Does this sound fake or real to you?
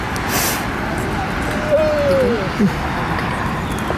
real